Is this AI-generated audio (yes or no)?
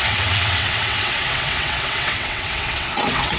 yes